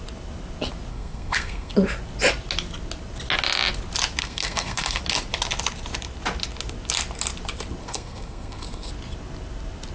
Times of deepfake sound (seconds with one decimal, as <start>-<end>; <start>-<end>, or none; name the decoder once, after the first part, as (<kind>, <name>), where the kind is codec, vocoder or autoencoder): 0.9-1.7 (codec, SNAC); 4.2-5.0; 7.8-8.9